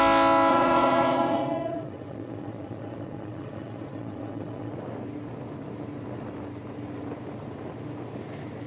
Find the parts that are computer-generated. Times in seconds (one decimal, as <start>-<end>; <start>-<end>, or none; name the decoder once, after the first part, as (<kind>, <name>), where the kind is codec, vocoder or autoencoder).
0.5-4.7 (vocoder, Vocos)